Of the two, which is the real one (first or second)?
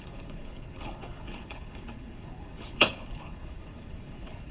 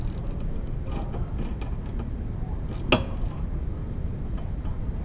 second